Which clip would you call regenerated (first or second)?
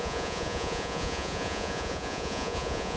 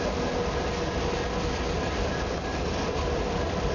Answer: first